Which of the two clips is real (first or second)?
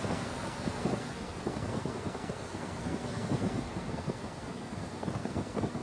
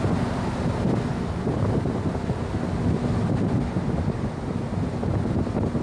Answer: second